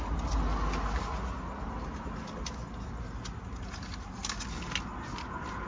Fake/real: real